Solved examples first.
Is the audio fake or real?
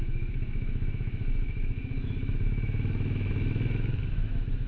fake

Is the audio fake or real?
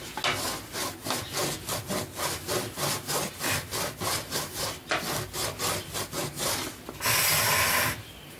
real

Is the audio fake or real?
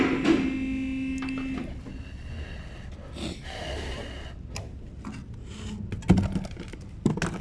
real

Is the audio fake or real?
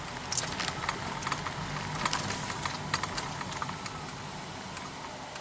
real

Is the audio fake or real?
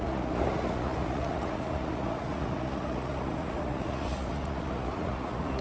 fake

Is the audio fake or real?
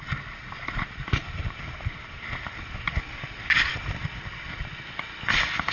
real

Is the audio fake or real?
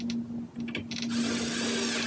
real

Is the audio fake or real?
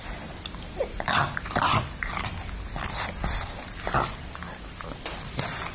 fake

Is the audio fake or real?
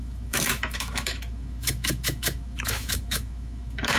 fake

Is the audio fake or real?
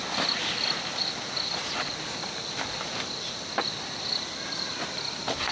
fake